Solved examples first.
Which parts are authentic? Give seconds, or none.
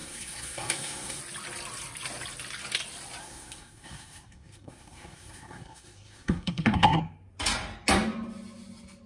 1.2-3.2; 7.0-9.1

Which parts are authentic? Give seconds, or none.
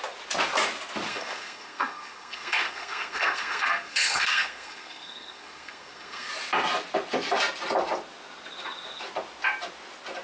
0.0-1.1; 6.3-10.2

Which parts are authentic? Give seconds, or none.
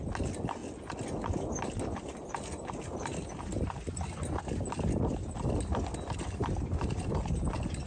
0.0-7.9